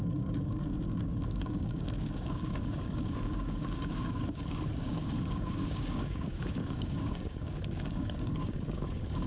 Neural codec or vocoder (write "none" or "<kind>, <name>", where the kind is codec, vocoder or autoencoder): codec, DAC